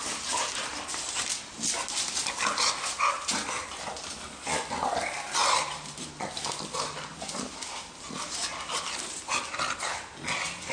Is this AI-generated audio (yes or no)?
no